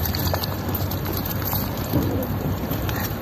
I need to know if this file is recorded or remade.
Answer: remade